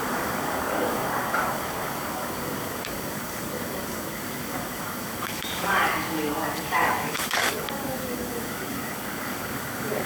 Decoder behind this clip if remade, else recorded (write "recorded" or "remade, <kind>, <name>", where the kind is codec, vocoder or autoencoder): remade, codec, DAC